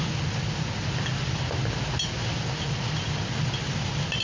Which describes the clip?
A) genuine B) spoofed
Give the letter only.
A